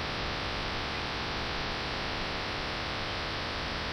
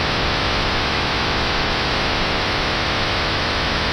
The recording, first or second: first